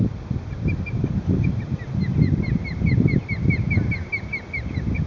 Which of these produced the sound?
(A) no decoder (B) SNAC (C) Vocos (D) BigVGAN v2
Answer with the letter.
A